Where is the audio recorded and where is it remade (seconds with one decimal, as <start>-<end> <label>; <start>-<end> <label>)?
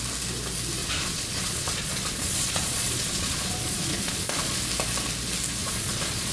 0.0-0.8 recorded; 0.8-4.6 remade; 4.6-5.6 recorded; 5.6-6.3 remade